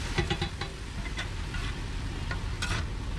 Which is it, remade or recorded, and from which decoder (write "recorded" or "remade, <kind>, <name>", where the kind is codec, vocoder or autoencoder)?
recorded